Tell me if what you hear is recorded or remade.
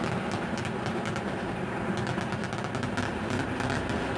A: recorded